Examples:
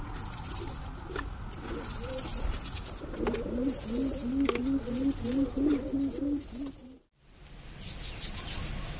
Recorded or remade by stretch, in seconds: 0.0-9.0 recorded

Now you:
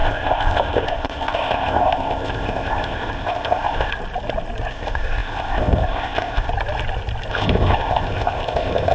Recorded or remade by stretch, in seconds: 0.0-3.9 remade; 3.9-4.7 recorded; 4.7-6.5 remade; 6.5-7.3 recorded; 7.3-8.9 remade

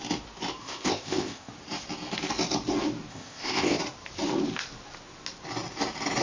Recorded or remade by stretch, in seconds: 0.0-0.6 recorded; 0.6-1.5 remade; 1.5-3.1 recorded; 3.1-3.8 remade; 3.8-6.2 recorded

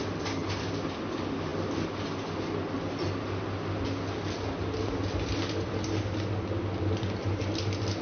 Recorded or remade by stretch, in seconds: 0.0-8.0 recorded

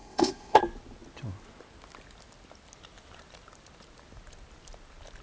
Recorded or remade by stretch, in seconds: 0.0-0.6 remade; 0.6-5.2 recorded

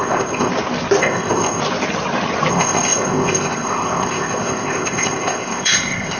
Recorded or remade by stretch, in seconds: 0.0-0.5 remade; 0.5-1.0 recorded; 1.0-1.6 remade; 1.6-2.5 recorded; 2.5-6.2 remade

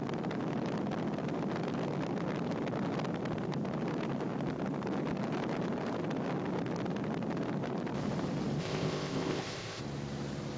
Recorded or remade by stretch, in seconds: 0.0-8.6 recorded; 8.6-9.8 remade; 9.8-10.6 recorded

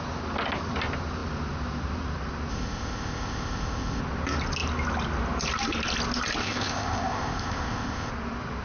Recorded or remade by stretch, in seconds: 0.0-2.5 recorded; 2.5-4.0 remade; 4.0-6.4 recorded; 6.4-8.1 remade; 8.1-8.6 recorded